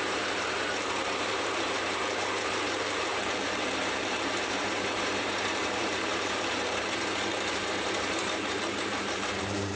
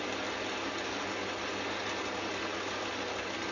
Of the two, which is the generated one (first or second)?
first